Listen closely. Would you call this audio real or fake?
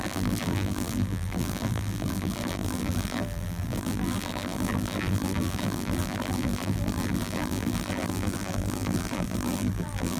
fake